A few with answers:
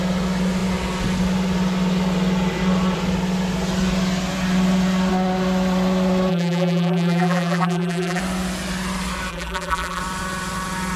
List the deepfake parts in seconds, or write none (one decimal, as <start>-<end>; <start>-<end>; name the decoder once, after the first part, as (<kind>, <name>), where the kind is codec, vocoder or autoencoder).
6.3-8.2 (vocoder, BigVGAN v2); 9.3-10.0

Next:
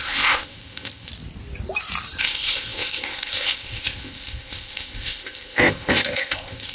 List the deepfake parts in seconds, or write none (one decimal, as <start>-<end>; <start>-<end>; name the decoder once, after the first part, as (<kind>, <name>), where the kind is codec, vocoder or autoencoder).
0.0-1.1 (codec, ZipCodec); 2.2-6.7

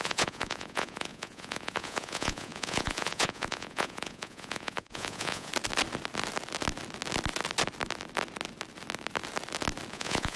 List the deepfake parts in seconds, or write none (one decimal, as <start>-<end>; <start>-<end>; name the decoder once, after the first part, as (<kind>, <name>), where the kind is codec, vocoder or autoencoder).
0.0-5.5 (vocoder, Vocos); 9.9-10.4

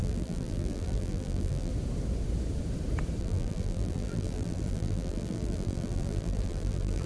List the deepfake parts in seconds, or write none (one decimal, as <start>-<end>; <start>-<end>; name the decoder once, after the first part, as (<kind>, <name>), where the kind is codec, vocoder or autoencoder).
0.0-1.7 (vocoder, BigVGAN v2); 3.2-7.1